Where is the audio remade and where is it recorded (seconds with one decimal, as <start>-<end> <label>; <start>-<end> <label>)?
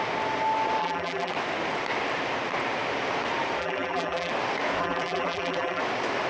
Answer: 0.0-0.8 recorded; 0.8-1.3 remade; 1.3-3.6 recorded; 3.6-4.3 remade; 4.3-4.8 recorded; 4.8-5.8 remade; 5.8-6.3 recorded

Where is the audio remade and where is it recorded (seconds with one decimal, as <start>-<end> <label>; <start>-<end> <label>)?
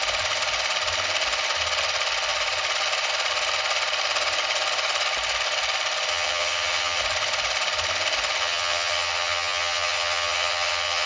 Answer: 0.0-6.1 recorded; 6.1-7.0 remade; 7.0-8.4 recorded; 8.4-11.1 remade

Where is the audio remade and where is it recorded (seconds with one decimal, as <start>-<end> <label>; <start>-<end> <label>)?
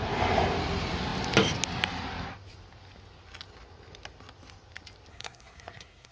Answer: 0.0-5.1 recorded; 5.1-6.1 remade